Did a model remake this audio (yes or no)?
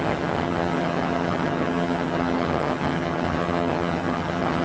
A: yes